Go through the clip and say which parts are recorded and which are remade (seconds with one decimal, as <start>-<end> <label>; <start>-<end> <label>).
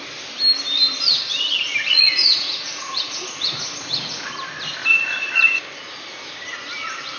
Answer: 0.0-1.9 recorded; 1.9-4.3 remade; 4.3-4.9 recorded; 4.9-5.6 remade; 5.6-7.2 recorded